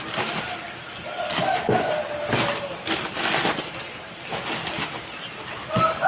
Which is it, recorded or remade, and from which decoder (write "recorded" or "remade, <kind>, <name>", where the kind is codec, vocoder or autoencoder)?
recorded